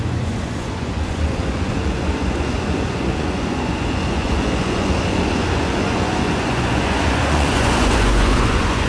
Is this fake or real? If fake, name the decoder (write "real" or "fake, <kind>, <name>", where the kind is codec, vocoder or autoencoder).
fake, vocoder, Vocos